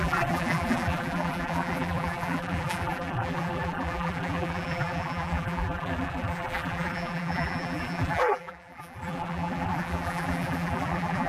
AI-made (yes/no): yes